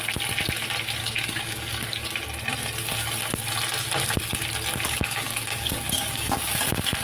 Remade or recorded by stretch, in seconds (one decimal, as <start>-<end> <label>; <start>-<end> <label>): 0.0-1.0 recorded; 1.0-2.1 remade; 2.1-4.7 recorded; 4.7-6.4 remade; 6.4-7.0 recorded

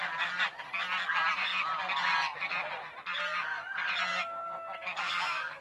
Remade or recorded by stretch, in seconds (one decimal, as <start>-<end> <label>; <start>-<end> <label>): 0.0-4.1 recorded; 4.1-5.6 remade

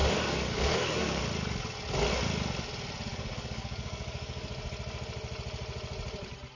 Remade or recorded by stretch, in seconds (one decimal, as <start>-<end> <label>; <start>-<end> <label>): 0.0-1.2 remade; 1.2-3.1 recorded; 3.1-4.5 remade; 4.5-6.6 recorded

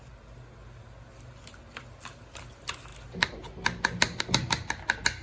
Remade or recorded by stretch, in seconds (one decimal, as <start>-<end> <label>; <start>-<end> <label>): 0.0-5.2 recorded

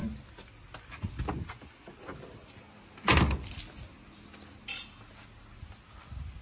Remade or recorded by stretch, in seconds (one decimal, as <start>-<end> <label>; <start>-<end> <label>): 0.0-6.4 recorded

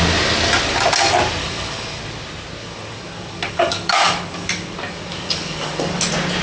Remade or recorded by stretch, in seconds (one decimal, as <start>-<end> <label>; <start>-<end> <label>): 0.0-1.4 recorded; 1.4-2.0 remade; 2.0-2.6 recorded; 2.6-6.0 remade; 6.0-6.4 recorded